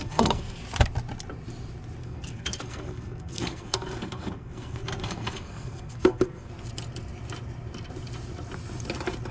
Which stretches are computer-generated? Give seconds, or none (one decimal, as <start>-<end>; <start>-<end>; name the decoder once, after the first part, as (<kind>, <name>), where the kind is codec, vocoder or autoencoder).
0.0-0.6 (codec, SNAC); 2.0-6.5